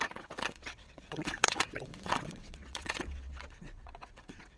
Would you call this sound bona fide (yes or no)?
no